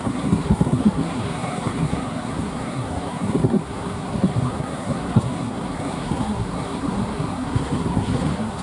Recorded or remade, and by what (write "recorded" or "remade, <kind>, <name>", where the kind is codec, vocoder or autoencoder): remade, codec, SNAC